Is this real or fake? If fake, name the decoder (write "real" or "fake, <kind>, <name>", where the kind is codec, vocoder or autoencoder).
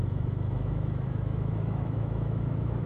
fake, autoencoder, DAC-VAE